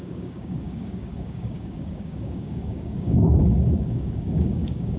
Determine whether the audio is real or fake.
fake